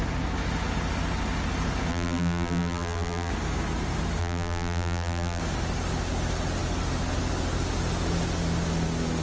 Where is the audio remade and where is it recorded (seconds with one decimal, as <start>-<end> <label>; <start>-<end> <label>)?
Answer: 0.0-1.9 recorded; 1.9-3.3 remade; 3.3-4.2 recorded; 4.2-5.4 remade; 5.4-9.2 recorded